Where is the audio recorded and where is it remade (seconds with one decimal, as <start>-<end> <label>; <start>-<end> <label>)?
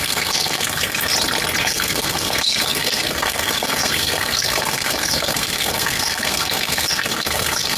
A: 0.0-1.1 remade; 1.1-1.6 recorded; 1.6-7.8 remade